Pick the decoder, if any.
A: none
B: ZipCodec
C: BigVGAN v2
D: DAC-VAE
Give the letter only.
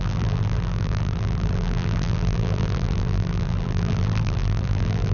C